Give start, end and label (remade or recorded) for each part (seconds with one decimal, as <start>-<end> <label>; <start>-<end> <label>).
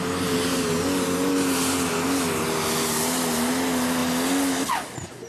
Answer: 0.0-5.3 recorded